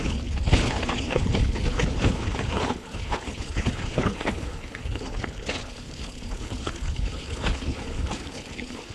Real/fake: fake